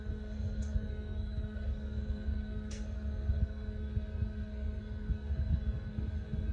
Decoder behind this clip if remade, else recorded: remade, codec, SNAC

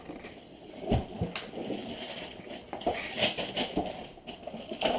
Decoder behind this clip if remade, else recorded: recorded